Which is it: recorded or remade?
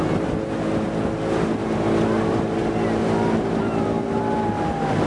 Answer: recorded